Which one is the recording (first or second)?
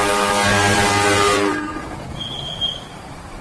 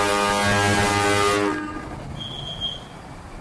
second